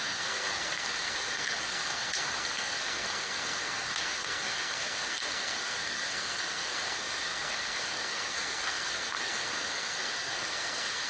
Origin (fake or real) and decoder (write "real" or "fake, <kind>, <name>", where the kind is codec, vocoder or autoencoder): fake, codec, SNAC